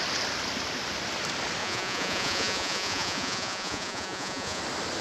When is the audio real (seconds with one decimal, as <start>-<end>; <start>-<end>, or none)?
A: 0.0-1.6; 4.6-5.0